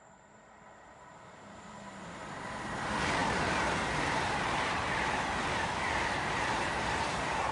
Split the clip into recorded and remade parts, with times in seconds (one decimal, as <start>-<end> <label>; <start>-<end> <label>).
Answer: 0.0-7.5 remade